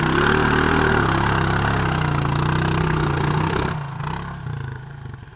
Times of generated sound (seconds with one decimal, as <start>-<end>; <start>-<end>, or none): 2.8-4.0